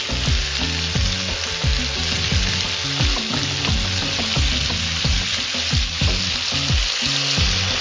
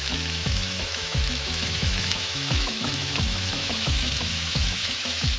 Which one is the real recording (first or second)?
first